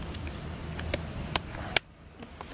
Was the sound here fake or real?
real